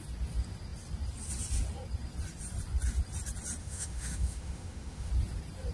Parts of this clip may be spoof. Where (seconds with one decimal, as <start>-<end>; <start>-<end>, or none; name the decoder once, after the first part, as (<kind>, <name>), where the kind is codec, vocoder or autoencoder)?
3.6-5.1 (autoencoder, DAC-VAE)